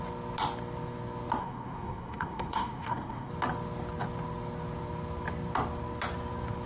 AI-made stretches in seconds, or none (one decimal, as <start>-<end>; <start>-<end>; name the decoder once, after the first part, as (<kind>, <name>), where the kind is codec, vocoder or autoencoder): 1.4-3.3 (codec, SNAC)